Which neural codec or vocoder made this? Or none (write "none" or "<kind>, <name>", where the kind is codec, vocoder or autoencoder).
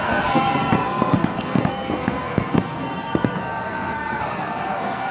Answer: codec, SNAC